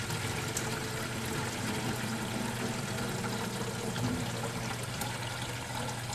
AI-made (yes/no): no